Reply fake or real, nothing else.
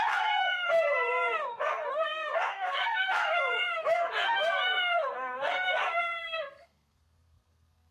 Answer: fake